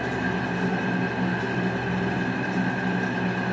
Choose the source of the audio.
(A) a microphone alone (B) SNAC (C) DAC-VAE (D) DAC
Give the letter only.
A